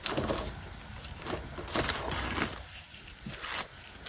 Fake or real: real